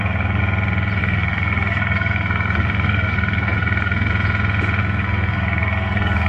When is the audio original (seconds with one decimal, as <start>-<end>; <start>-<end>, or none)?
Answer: 0.4-1.0; 4.1-4.8